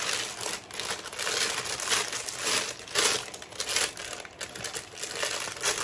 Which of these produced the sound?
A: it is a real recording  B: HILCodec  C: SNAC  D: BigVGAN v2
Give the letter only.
A